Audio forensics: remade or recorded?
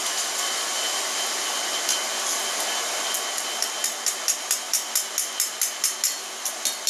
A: recorded